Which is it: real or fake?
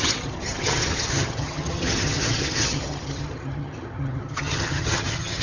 fake